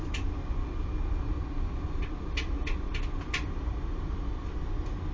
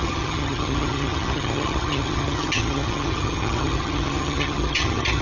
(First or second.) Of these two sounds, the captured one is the first